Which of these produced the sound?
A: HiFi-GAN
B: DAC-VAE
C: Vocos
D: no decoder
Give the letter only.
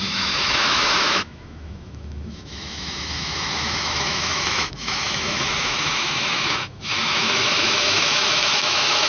B